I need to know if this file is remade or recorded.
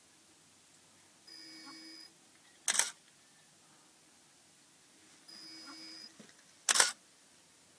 recorded